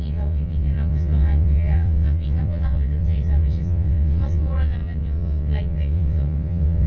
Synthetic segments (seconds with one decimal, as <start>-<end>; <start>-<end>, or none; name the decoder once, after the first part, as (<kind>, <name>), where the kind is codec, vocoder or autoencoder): 0.0-6.9 (vocoder, WaveNeXt)